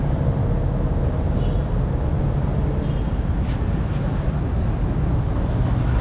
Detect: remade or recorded recorded